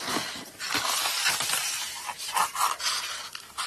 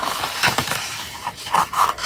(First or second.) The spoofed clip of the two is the second